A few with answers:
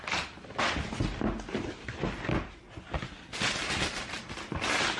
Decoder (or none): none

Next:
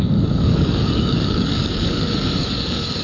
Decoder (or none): codec, DAC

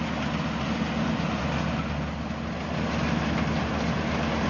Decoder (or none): none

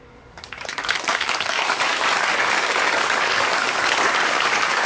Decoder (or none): codec, DAC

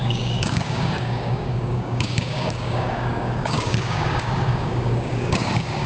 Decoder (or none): codec, DAC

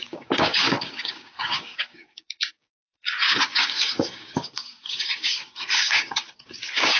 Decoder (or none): codec, DAC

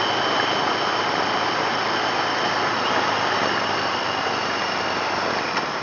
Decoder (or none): none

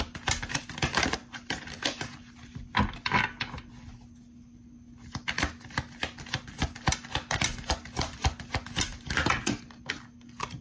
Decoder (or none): none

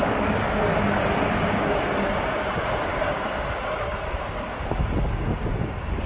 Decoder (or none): codec, DAC